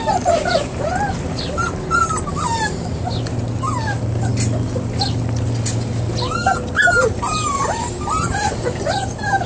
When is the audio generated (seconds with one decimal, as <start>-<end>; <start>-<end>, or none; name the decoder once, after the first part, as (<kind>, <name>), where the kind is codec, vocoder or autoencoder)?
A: 0.0-9.5 (vocoder, BigVGAN v2)